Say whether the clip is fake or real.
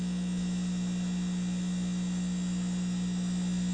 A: real